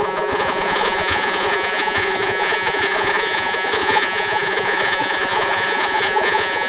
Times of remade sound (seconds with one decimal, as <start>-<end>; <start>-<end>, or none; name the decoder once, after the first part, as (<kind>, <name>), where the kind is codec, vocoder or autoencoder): 0.0-6.7 (vocoder, Vocos)